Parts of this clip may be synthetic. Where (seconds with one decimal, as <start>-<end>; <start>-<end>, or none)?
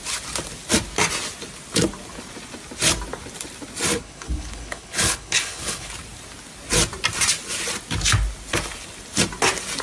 3.9-5.9